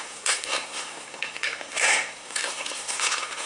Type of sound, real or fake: fake